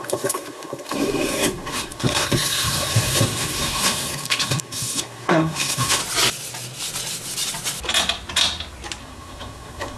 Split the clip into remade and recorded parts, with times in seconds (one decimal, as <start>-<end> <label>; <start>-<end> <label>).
0.0-6.0 remade; 6.0-9.0 recorded; 9.0-10.0 remade